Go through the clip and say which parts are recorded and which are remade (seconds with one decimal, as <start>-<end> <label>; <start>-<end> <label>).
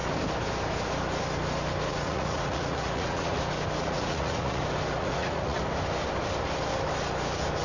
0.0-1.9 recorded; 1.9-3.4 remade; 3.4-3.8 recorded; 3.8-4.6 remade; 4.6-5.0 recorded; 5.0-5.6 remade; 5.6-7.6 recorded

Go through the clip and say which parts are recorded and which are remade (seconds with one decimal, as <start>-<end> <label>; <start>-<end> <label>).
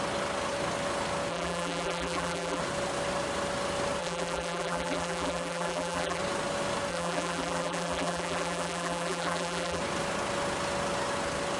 0.0-1.3 recorded; 1.3-2.6 remade; 2.6-4.0 recorded; 4.0-6.2 remade; 6.2-6.9 recorded; 6.9-9.8 remade; 9.8-11.6 recorded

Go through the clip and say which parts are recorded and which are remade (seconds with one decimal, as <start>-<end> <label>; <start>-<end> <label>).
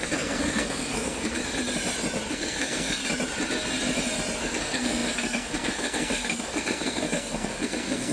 0.0-1.4 remade; 1.4-2.3 recorded; 2.3-3.0 remade; 3.0-4.4 recorded; 4.4-8.1 remade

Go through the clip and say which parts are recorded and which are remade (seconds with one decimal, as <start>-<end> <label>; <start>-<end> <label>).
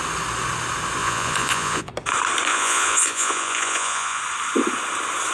0.0-1.0 recorded; 1.0-1.9 remade; 1.9-2.5 recorded; 2.5-4.2 remade; 4.2-5.3 recorded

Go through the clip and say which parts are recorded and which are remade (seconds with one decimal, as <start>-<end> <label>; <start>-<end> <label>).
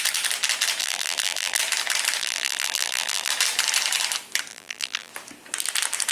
0.0-0.8 recorded; 0.8-1.6 remade; 1.6-2.2 recorded; 2.2-3.3 remade; 3.3-4.5 recorded; 4.5-5.1 remade; 5.1-6.1 recorded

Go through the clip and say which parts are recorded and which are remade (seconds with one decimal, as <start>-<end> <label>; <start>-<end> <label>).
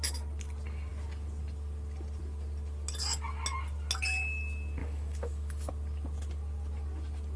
0.0-4.8 recorded; 4.8-5.7 remade; 5.7-7.4 recorded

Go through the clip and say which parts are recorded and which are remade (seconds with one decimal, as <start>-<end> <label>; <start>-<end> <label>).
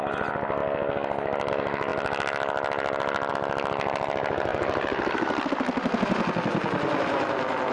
0.0-7.7 recorded